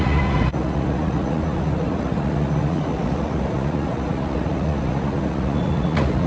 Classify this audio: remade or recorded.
remade